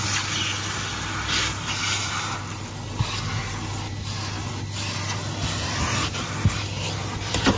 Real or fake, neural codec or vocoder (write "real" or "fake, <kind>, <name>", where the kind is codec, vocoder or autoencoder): real